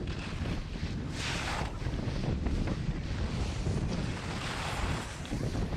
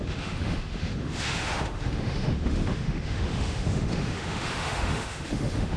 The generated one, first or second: second